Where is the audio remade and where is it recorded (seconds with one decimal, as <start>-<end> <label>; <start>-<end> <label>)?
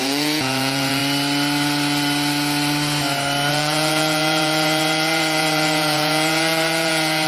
0.0-1.0 remade; 1.0-3.5 recorded; 3.5-7.3 remade